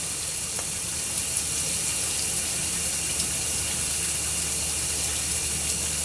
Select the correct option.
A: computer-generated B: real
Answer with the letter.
B